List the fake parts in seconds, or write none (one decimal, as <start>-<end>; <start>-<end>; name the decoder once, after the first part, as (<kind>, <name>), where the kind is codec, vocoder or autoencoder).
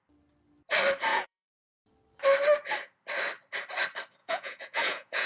1.1-1.8 (vocoder, Vocos); 4.2-5.3